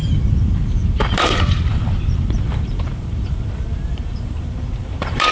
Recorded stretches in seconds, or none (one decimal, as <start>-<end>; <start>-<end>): none